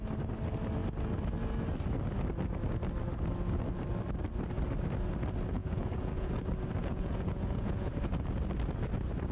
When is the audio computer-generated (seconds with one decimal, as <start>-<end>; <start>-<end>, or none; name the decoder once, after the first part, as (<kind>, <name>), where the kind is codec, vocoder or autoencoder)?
5.6-6.3 (vocoder, Vocos); 6.8-7.9